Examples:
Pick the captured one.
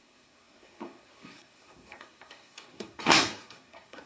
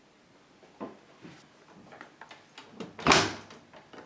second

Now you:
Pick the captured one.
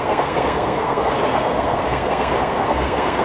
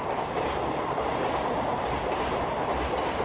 second